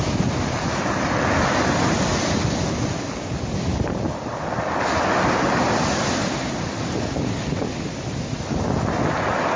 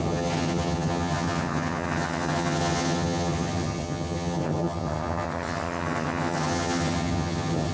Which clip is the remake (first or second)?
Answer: second